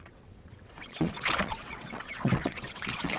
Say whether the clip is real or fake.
fake